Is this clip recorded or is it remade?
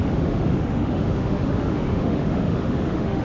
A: remade